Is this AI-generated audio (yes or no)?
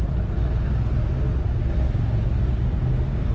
no